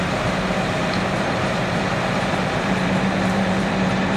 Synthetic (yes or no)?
yes